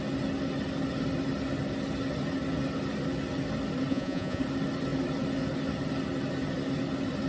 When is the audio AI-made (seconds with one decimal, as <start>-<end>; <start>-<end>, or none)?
3.9-4.4